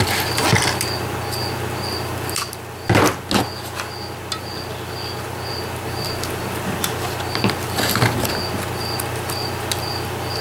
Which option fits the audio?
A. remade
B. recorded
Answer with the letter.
B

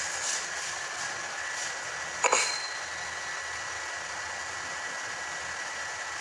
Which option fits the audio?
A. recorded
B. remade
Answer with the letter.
A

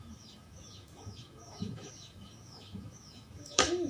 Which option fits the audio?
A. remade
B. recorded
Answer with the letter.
A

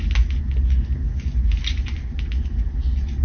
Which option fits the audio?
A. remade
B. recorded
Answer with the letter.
B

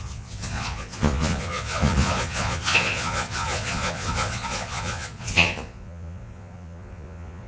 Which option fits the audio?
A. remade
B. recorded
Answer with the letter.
A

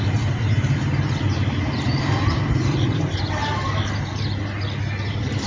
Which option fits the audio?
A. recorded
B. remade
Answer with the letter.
B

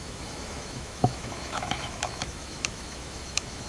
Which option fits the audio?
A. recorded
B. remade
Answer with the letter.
B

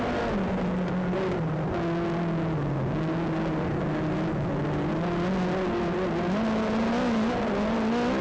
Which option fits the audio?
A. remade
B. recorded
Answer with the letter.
B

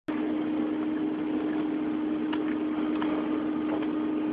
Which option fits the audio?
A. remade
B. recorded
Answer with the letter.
B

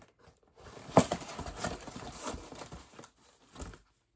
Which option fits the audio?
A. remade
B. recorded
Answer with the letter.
B